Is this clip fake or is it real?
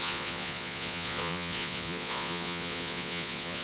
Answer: fake